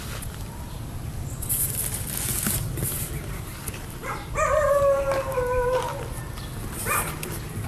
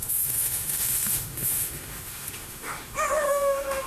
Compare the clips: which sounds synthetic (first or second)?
second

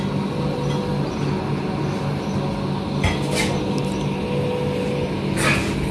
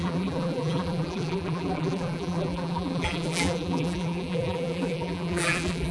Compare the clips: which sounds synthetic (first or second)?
second